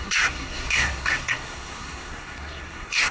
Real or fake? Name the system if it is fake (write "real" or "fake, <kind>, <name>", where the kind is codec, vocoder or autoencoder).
fake, codec, SNAC